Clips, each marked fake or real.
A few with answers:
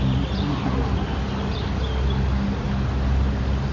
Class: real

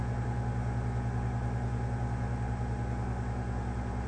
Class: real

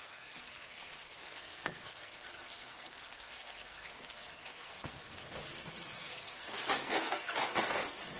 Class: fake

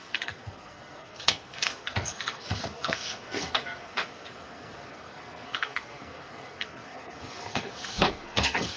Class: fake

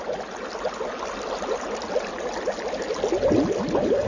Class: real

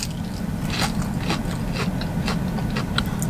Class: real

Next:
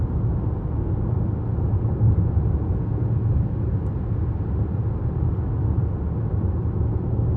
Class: real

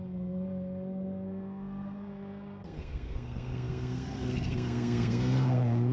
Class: fake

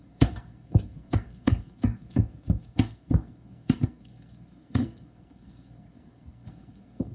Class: fake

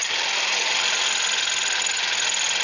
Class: real